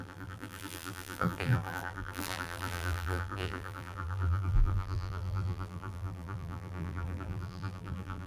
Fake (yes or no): yes